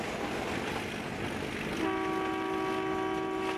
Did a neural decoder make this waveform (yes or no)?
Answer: no